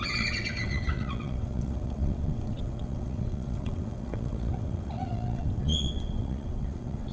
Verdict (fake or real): fake